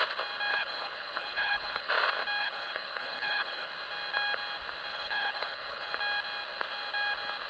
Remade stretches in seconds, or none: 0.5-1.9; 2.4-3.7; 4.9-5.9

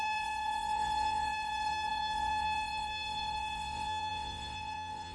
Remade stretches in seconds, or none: 0.0-5.1

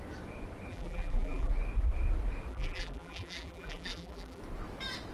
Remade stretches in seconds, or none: 0.7-1.5; 2.5-4.4